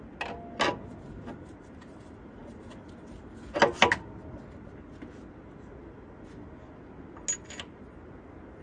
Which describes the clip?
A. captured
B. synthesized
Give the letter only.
A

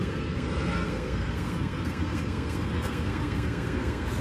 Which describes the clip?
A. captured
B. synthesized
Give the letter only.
B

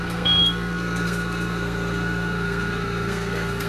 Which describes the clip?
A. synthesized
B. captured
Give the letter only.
A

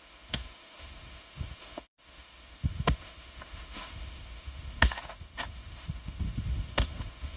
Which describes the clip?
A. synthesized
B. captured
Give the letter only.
A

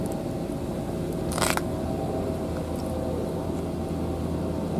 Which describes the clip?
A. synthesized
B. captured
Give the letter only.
B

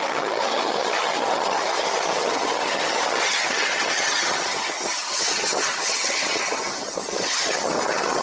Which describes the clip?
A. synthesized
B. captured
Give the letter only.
A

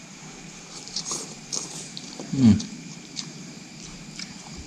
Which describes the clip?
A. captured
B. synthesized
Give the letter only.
B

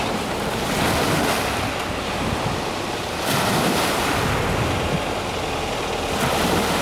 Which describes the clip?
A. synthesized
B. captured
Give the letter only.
B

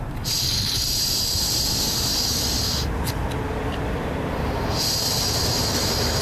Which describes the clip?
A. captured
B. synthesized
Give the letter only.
A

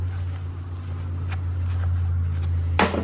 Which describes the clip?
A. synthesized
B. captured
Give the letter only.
B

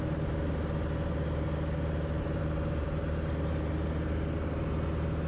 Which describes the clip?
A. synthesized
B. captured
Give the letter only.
B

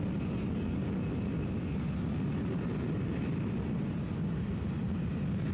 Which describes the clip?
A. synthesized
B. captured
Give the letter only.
B